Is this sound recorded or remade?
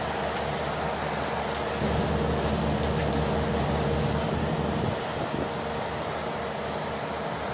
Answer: recorded